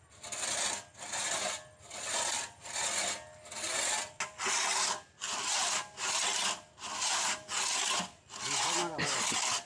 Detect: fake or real real